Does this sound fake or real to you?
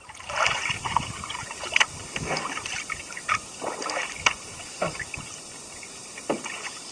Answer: real